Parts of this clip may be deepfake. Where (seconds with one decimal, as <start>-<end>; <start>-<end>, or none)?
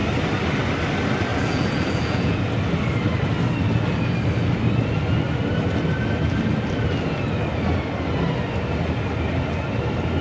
1.3-2.4